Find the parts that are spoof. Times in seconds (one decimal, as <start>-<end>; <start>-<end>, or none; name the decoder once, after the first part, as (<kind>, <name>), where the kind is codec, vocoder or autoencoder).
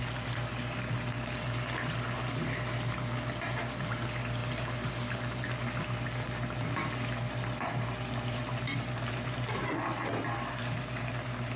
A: none